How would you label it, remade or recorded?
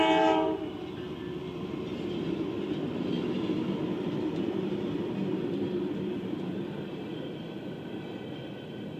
recorded